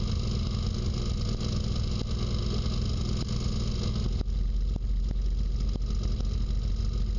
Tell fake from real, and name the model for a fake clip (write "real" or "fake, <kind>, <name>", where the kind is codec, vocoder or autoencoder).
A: real